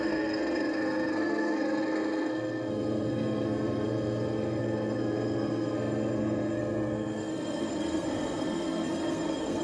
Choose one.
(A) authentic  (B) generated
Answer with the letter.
B